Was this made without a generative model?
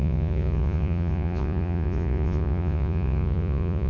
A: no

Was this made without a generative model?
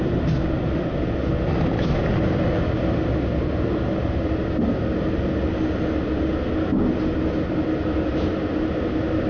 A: yes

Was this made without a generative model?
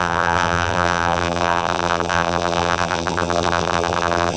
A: no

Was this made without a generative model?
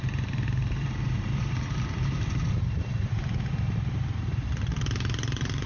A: no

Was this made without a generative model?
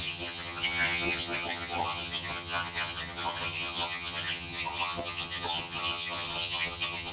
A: no